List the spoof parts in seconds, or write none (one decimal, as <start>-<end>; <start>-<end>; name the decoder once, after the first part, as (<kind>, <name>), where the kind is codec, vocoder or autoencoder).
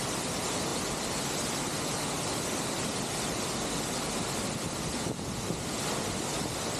none